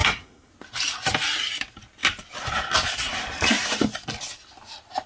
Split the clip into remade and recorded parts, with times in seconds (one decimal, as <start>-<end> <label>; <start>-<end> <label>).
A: 0.0-0.5 remade; 0.5-5.1 recorded

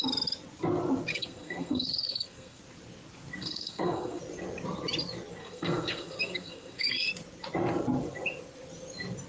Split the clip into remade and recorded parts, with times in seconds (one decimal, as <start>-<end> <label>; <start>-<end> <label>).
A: 0.0-1.1 recorded; 1.1-2.6 remade; 2.6-3.4 recorded; 3.4-4.2 remade; 4.2-5.4 recorded; 5.4-7.1 remade; 7.1-9.3 recorded

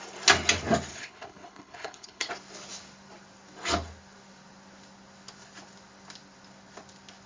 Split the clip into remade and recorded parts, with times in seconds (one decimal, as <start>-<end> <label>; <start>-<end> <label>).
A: 0.0-0.9 recorded; 0.9-2.3 remade; 2.3-7.3 recorded

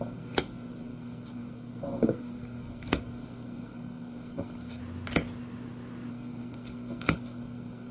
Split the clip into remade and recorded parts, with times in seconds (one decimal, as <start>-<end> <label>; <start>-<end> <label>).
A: 0.0-4.8 remade; 4.8-6.1 recorded; 6.1-7.9 remade